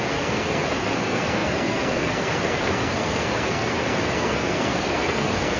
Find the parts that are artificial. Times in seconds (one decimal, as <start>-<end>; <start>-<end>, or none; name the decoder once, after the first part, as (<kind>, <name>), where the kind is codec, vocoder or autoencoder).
0.0-5.6 (codec, SNAC)